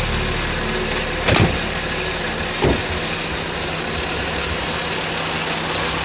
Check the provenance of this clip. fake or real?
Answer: real